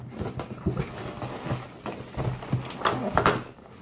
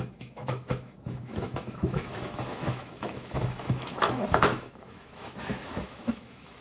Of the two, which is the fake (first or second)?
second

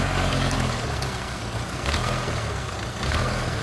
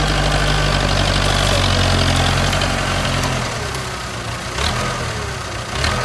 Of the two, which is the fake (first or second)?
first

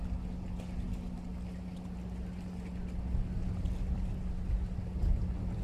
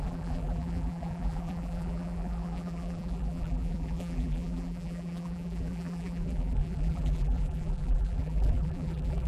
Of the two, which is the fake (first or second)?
second